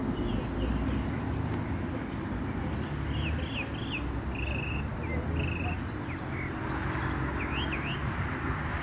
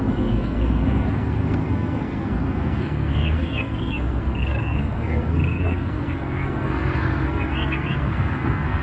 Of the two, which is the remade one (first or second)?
second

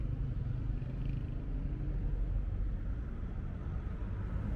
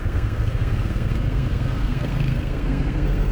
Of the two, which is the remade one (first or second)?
second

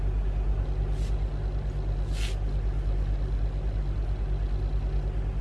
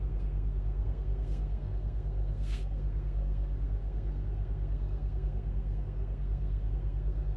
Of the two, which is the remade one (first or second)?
second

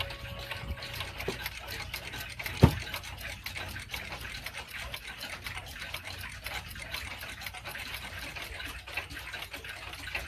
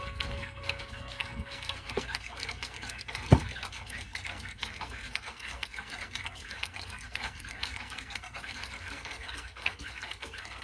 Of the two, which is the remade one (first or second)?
second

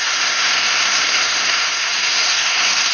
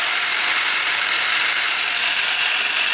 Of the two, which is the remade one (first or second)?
first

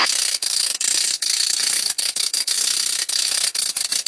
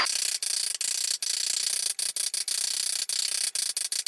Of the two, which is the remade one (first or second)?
first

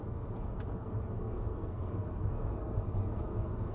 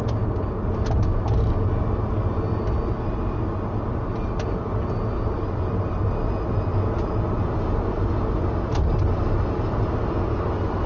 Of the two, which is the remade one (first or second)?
first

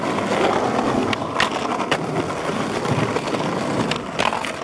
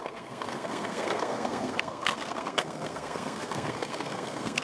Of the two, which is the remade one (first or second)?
second